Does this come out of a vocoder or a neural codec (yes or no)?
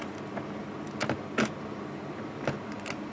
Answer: no